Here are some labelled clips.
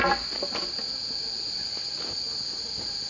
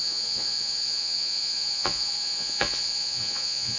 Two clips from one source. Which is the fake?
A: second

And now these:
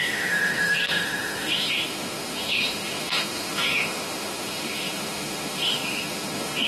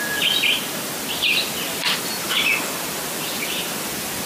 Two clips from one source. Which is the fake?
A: first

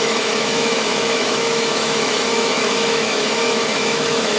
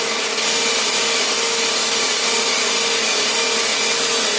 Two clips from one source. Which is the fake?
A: first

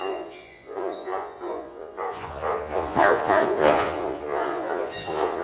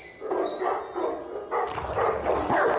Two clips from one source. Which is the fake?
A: first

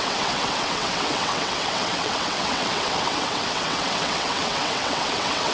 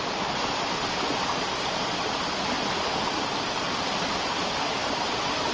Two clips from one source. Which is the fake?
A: first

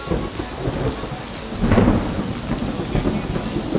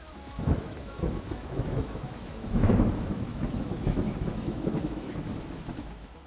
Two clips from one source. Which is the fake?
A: second